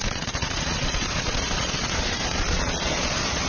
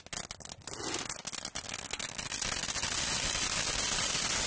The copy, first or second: first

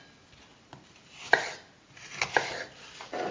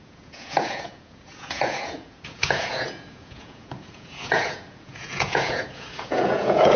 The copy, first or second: second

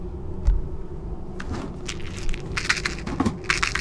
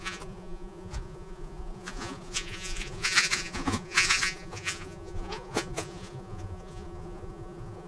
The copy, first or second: second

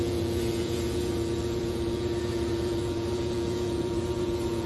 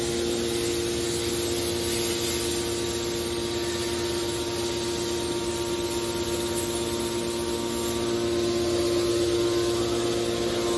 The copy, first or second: first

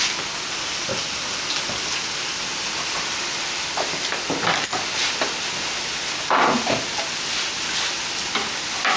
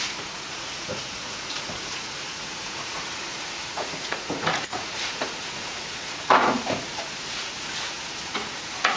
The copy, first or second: second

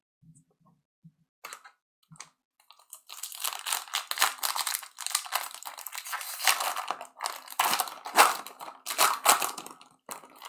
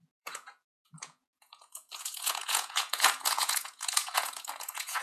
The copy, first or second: second